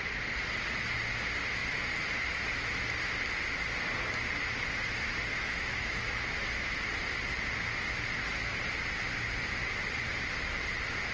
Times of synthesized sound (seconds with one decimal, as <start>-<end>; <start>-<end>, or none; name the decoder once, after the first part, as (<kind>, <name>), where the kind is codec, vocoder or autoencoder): 5.3-6.8 (autoencoder, DAC-VAE)